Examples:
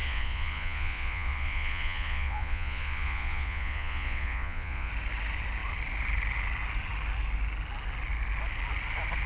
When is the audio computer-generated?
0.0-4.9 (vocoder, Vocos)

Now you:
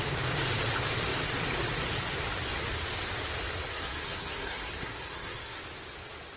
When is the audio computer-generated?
3.7-5.6 (codec, SNAC)

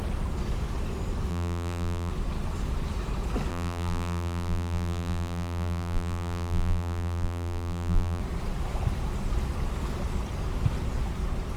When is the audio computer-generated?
1.3-2.1 (vocoder, BigVGAN v2); 3.5-8.2

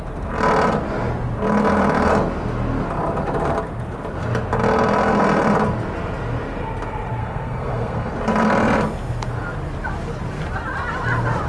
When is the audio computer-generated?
7.2-8.1 (codec, SNAC)